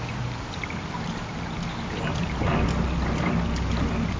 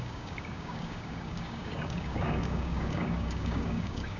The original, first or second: first